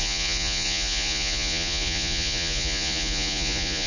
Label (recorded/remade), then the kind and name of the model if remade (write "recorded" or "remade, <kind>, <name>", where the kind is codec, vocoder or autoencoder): remade, vocoder, Vocos